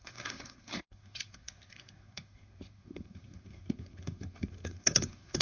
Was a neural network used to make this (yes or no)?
yes